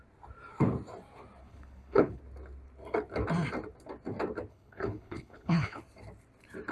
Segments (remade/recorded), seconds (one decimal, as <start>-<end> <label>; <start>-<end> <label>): 0.0-1.4 recorded; 1.4-2.2 remade; 2.2-4.5 recorded; 4.5-5.8 remade; 5.8-6.7 recorded